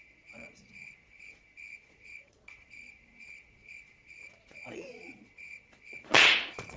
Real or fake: fake